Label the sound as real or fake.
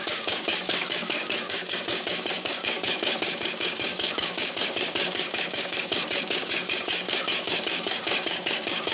fake